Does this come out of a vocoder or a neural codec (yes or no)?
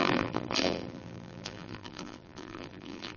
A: yes